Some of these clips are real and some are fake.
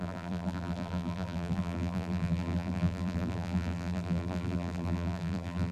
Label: fake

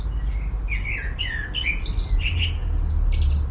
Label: real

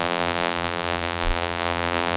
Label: fake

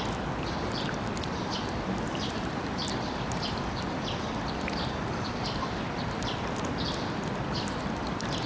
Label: fake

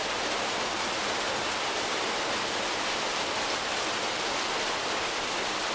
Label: real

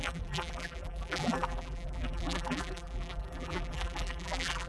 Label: fake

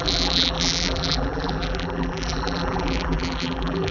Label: fake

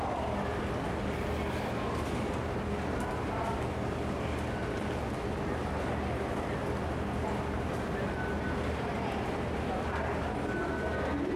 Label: real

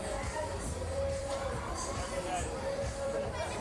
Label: fake